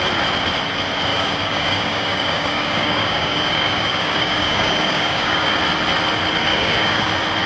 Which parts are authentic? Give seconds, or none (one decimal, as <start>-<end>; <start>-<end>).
0.0-1.1; 5.6-6.5; 7.1-7.5